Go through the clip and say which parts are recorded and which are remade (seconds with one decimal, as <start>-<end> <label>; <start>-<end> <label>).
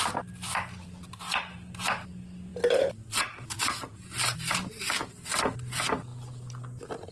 0.0-7.1 recorded